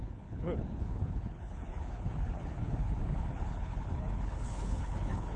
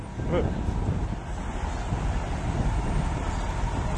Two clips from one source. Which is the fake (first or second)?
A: first